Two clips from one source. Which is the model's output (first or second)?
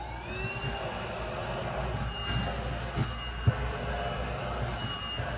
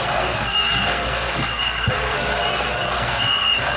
second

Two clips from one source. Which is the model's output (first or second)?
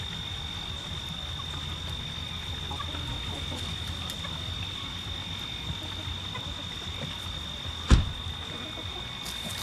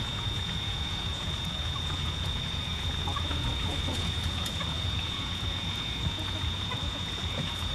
second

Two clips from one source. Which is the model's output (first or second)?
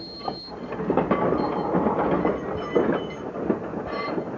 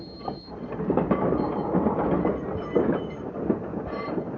second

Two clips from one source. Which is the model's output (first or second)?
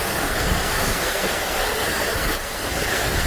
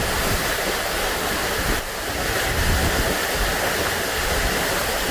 first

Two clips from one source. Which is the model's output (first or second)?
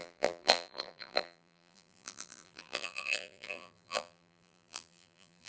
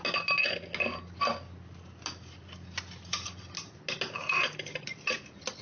first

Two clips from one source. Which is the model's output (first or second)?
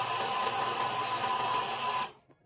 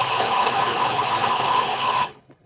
second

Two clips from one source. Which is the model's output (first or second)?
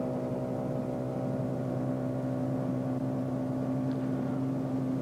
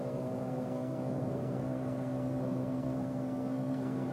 second